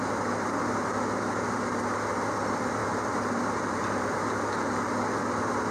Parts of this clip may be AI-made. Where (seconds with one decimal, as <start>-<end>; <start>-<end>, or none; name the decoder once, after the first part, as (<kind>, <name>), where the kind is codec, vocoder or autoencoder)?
2.8-4.9 (vocoder, BigVGAN v2)